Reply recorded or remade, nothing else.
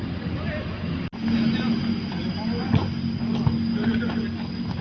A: recorded